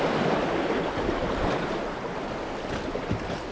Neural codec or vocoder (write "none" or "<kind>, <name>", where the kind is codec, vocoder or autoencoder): none